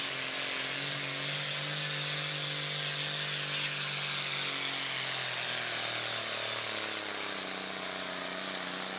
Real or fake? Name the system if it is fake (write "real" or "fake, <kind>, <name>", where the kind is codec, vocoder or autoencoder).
real